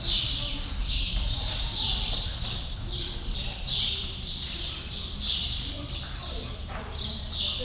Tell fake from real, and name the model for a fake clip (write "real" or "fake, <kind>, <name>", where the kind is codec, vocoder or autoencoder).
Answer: fake, vocoder, BigVGAN v2